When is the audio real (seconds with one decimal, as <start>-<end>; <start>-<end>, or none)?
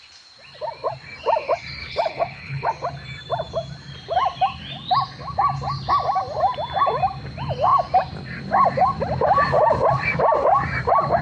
0.0-1.8; 2.7-11.2